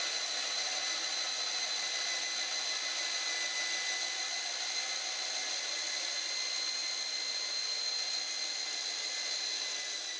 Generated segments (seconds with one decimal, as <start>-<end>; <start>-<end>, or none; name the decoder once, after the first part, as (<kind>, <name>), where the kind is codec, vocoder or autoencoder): none